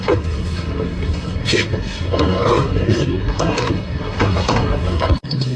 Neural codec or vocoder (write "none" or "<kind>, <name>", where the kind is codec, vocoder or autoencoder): codec, SNAC